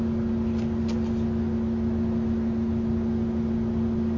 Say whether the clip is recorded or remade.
recorded